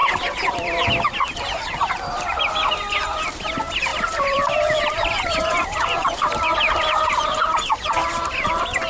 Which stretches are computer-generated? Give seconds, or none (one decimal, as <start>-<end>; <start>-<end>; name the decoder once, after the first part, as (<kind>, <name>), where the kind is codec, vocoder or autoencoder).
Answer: 0.0-1.9 (vocoder, BigVGAN v2); 3.9-8.5

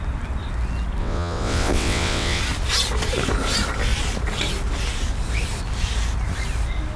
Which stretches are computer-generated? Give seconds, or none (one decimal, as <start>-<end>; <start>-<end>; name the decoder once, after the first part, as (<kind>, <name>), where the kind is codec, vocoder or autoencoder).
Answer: 1.0-2.4 (vocoder, WaveNeXt)